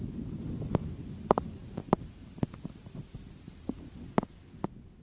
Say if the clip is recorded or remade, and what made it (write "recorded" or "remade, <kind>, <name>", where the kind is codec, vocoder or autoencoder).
recorded